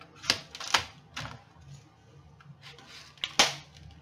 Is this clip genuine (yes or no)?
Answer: yes